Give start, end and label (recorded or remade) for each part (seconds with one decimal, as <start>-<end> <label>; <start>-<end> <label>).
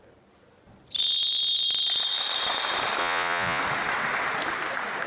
0.0-3.0 recorded; 3.0-3.6 remade; 3.6-5.1 recorded